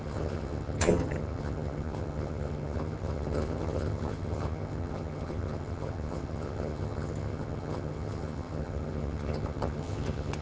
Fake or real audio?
fake